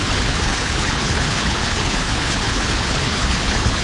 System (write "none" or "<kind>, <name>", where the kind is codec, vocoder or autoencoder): codec, HILCodec